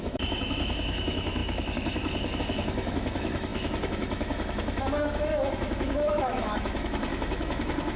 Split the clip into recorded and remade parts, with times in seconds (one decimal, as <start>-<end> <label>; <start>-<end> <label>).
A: 0.0-8.0 remade